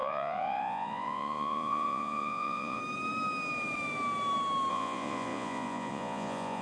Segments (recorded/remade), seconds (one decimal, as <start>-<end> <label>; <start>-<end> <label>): 0.0-2.8 remade; 2.8-4.7 recorded; 4.7-6.6 remade